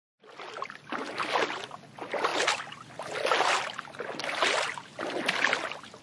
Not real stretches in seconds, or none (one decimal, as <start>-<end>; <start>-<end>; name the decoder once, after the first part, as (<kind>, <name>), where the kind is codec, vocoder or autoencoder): none

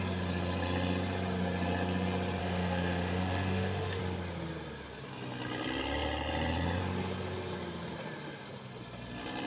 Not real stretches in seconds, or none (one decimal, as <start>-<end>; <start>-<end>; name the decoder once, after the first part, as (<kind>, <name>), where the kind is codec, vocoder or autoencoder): 2.4-4.0 (autoencoder, DAC-VAE)

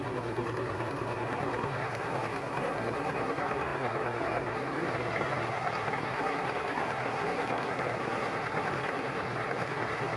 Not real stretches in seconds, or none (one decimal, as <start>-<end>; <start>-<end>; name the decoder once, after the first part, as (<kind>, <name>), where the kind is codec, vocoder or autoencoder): 0.0-10.2 (codec, SNAC)

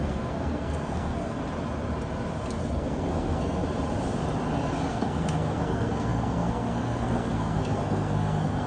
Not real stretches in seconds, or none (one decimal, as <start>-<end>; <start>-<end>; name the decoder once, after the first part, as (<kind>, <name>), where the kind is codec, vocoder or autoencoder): 0.0-1.4 (codec, SNAC); 2.7-3.6; 4.9-8.7

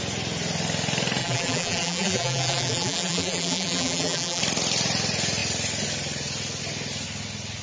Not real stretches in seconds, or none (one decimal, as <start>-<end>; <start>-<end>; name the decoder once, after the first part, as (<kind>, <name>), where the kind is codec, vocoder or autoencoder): 1.2-4.4 (vocoder, BigVGAN v2)